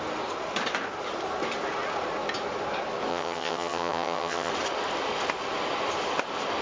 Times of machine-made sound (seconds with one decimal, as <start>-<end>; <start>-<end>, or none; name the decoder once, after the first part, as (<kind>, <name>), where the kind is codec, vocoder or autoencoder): 3.1-4.5 (vocoder, HiFi-GAN)